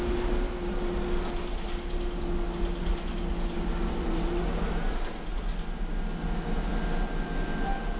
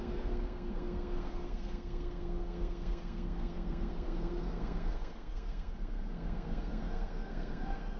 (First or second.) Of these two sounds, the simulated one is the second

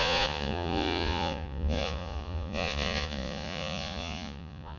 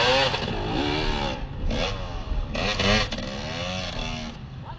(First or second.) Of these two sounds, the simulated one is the first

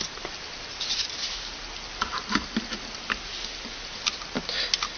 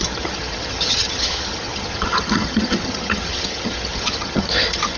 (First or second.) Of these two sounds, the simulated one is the second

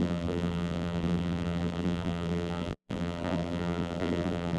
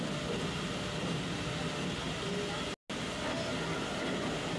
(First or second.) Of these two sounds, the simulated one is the first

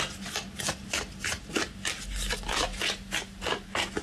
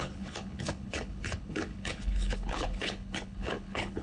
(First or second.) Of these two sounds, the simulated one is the second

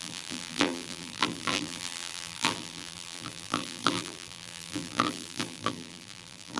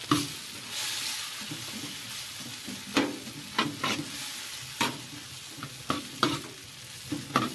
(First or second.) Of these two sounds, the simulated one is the first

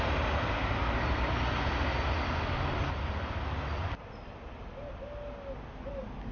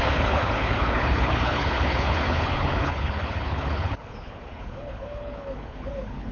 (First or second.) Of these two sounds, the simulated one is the second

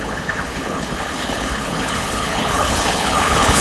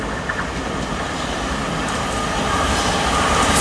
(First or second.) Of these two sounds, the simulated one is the first